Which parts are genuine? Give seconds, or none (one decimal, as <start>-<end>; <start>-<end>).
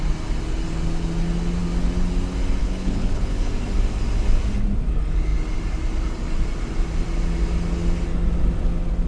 0.0-2.6; 3.5-9.1